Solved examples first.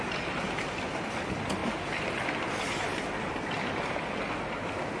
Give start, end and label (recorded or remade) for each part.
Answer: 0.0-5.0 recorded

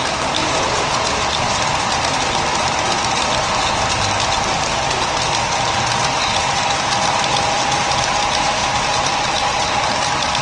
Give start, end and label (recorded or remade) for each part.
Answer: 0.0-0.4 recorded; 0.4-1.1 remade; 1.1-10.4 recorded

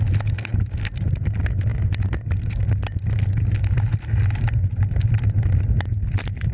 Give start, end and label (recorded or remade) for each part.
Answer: 0.0-6.5 recorded